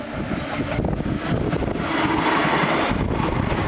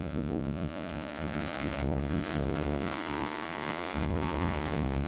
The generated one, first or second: second